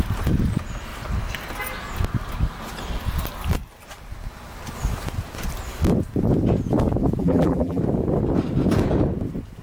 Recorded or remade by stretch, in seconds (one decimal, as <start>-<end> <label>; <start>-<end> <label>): 0.0-7.2 recorded; 7.2-7.8 remade; 7.8-9.6 recorded